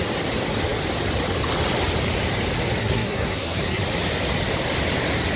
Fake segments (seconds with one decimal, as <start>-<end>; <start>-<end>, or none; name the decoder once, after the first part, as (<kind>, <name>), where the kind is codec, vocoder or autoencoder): 2.8-3.8 (codec, SNAC)